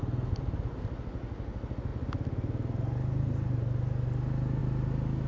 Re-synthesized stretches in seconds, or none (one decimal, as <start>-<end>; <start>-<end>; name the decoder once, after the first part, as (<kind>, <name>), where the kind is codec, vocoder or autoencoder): none